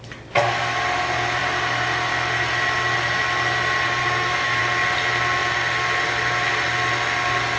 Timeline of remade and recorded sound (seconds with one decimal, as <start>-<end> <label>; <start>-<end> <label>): 0.0-4.0 recorded; 4.0-4.6 remade; 4.6-7.6 recorded